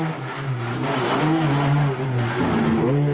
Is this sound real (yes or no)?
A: yes